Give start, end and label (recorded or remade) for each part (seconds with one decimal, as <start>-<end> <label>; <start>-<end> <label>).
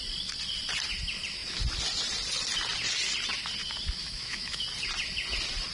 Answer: 0.0-4.0 recorded; 4.0-4.6 remade; 4.6-5.7 recorded